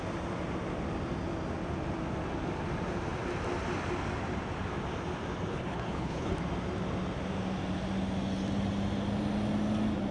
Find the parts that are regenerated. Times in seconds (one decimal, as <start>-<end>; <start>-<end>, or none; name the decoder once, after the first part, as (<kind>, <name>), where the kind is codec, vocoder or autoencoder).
5.5-6.3 (codec, HILCodec)